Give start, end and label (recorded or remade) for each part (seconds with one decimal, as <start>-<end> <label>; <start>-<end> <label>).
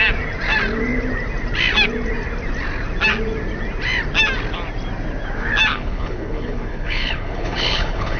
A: 0.0-5.7 recorded; 5.7-8.2 remade